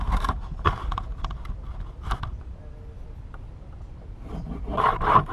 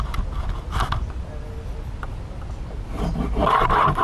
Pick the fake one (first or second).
first